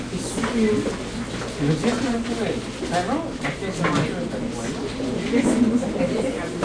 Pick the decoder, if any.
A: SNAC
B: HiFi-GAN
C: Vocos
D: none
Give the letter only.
D